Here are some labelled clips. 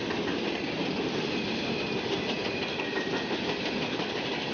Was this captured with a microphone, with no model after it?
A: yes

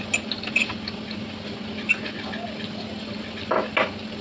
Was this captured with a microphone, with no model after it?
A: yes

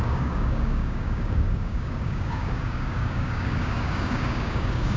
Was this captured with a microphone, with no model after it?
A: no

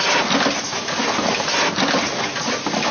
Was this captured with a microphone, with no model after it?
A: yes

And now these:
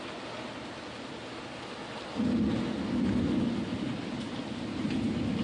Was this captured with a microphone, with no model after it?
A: yes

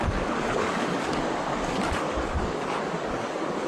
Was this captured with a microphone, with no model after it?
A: no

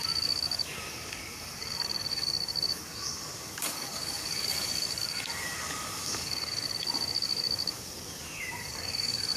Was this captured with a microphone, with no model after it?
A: no